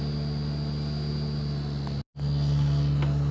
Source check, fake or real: real